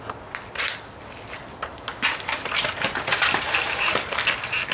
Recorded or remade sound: recorded